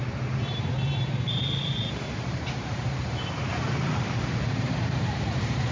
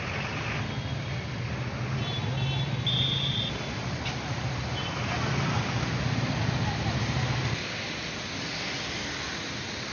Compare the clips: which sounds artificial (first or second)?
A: first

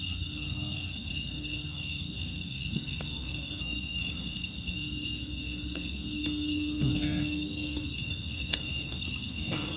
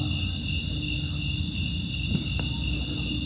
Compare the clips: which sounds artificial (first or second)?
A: first